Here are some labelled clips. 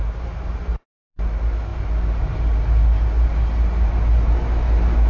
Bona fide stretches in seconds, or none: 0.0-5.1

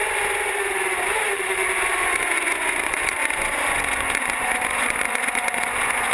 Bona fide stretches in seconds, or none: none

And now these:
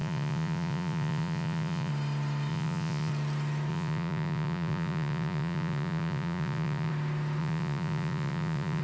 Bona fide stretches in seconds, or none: 1.9-2.5; 3.1-3.7; 6.9-7.4

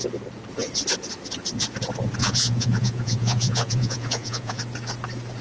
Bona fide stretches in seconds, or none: 0.0-2.2; 4.6-5.4

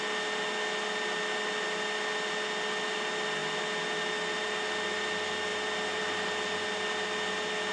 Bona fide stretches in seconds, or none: 0.0-7.7

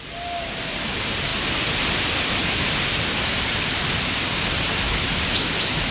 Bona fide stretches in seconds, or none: 0.0-5.9